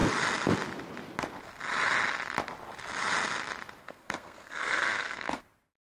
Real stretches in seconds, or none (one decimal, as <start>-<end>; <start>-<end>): 0.0-3.8; 5.4-5.9